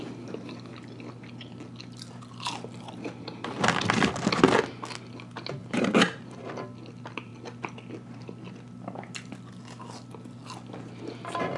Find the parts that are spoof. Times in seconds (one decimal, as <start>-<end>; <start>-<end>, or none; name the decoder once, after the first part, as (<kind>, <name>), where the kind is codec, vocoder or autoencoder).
5.6-6.4 (vocoder, BigVGAN v2)